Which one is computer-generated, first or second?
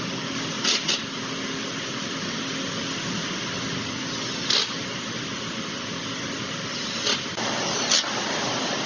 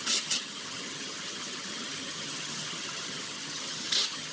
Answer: second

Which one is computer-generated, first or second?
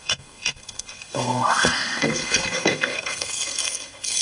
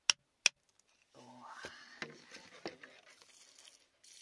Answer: first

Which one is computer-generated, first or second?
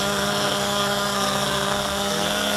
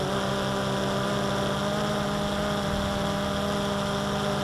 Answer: first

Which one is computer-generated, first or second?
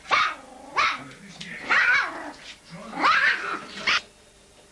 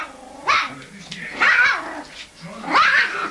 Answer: second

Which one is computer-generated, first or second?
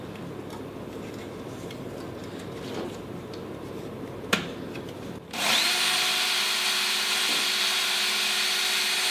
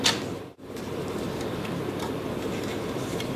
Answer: second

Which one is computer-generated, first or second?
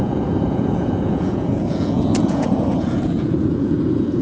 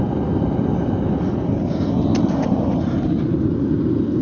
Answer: first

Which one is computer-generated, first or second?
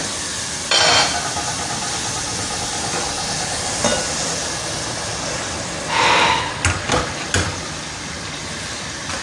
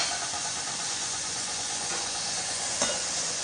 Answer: second